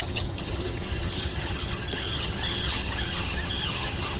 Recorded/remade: remade